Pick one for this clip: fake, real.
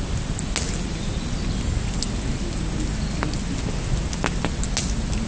real